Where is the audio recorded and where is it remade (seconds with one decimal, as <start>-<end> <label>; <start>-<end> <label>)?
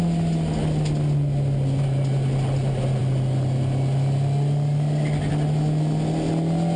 0.0-6.8 recorded